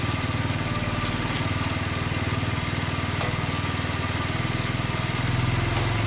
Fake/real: real